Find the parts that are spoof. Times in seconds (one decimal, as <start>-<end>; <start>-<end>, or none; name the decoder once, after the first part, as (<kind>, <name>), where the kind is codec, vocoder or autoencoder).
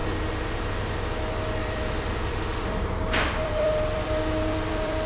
1.6-5.1 (vocoder, BigVGAN v2)